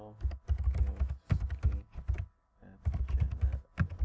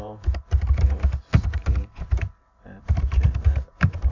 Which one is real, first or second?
first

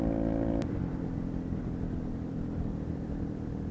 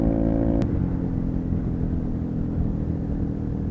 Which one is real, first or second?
second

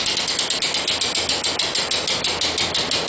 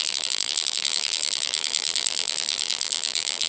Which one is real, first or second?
first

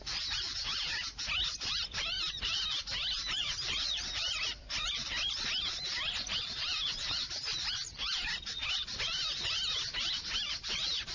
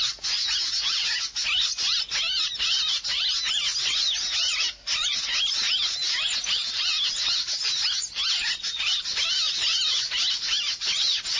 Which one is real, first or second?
second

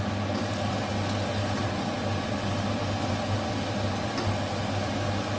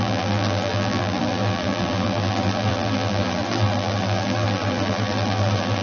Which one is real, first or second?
first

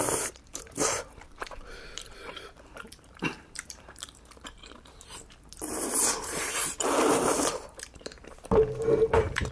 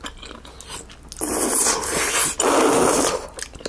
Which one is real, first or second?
second